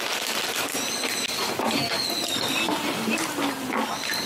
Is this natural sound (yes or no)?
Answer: yes